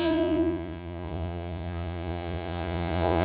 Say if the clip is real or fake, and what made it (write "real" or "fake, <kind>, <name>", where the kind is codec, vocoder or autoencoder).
fake, vocoder, Vocos